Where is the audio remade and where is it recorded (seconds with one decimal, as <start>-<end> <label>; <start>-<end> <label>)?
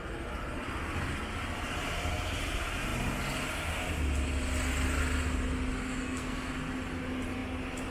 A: 0.0-6.0 recorded; 6.0-6.5 remade; 6.5-7.9 recorded